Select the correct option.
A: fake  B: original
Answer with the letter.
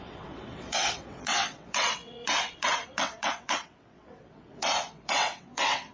A